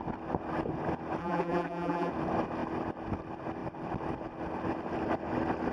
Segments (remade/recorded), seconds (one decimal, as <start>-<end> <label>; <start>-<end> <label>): 0.0-1.2 recorded; 1.2-2.1 remade; 2.1-5.7 recorded

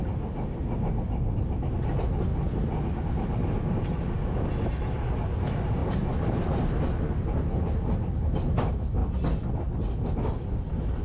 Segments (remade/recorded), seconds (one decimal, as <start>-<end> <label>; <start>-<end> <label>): 0.0-5.8 recorded; 5.8-6.8 remade; 6.8-11.0 recorded

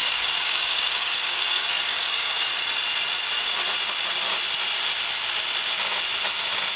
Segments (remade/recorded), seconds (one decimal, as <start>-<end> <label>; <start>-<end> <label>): 0.0-2.5 remade; 2.5-6.8 recorded

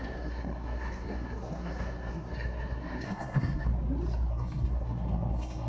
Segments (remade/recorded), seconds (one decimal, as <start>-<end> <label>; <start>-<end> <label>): 0.0-3.7 remade; 3.7-4.3 recorded; 4.3-5.7 remade

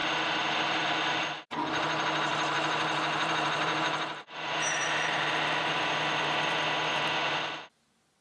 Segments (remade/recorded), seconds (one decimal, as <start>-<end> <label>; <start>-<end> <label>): 0.0-2.3 recorded; 2.3-5.8 remade; 5.8-8.2 recorded